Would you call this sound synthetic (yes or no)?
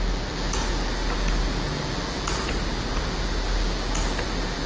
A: no